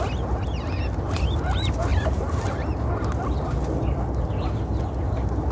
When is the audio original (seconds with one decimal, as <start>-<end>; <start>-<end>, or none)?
0.0-1.9; 2.9-5.5